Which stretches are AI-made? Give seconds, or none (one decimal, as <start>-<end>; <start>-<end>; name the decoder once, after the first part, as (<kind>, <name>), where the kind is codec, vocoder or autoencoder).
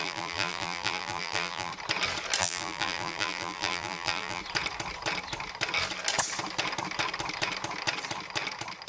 0.0-1.7 (vocoder, BigVGAN v2); 2.4-4.4